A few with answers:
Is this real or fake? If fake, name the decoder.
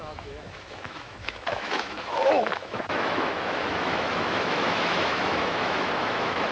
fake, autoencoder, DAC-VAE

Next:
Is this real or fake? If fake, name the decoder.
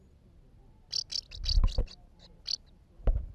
real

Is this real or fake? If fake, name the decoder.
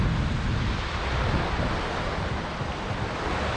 real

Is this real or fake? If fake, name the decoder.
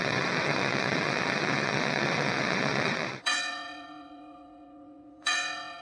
fake, vocoder, WaveNeXt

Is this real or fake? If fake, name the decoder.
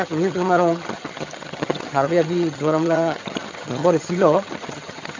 fake, vocoder, HiFi-GAN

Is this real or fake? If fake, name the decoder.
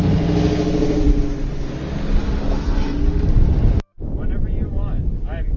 real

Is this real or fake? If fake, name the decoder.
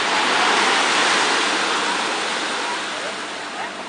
real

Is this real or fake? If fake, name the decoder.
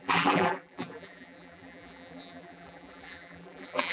fake, vocoder, BigVGAN v2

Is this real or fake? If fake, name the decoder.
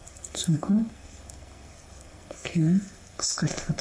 fake, codec, SNAC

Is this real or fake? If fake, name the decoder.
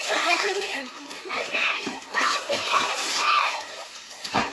fake, codec, SNAC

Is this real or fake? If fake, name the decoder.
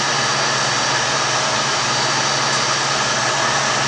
real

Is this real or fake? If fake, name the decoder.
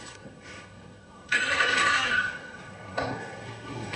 fake, codec, SNAC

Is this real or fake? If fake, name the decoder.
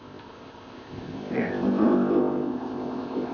fake, codec, ZipCodec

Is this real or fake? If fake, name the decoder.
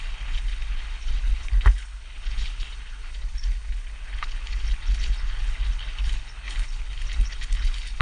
fake, codec, HILCodec